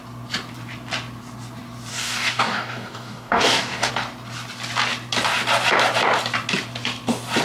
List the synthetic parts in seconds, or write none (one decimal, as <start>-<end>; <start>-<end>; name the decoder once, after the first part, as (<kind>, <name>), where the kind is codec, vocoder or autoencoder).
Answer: 1.9-3.9 (codec, DAC)